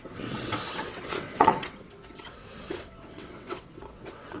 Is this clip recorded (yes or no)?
no